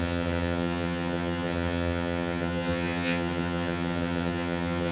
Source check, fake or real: fake